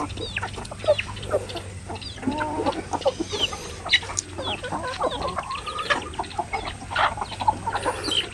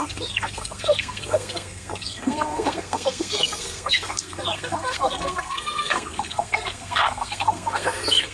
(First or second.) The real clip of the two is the first